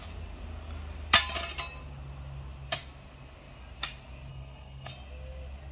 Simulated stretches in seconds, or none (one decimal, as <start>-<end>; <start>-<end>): 4.3-4.9